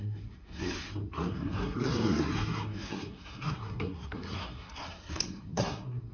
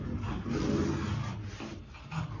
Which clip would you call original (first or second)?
second